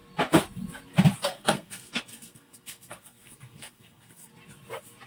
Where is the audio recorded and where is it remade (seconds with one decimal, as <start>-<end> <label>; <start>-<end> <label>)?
0.0-1.2 recorded; 1.2-4.3 remade; 4.3-5.1 recorded